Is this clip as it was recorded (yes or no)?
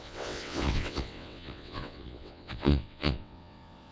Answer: no